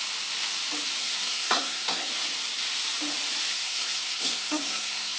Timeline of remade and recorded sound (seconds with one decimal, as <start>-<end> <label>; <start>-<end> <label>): 0.0-1.0 recorded; 1.0-2.1 remade; 2.1-3.5 recorded; 3.5-5.2 remade